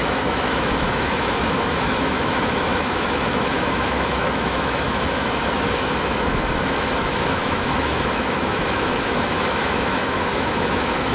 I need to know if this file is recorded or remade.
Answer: remade